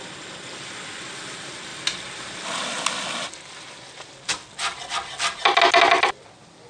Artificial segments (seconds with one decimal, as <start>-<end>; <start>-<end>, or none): none